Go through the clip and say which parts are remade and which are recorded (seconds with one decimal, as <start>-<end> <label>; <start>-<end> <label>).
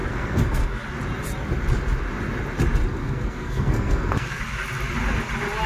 0.0-0.8 remade; 0.8-3.0 recorded; 3.0-4.4 remade; 4.4-5.7 recorded